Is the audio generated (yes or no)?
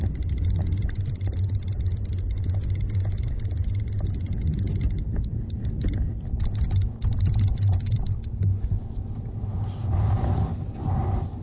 no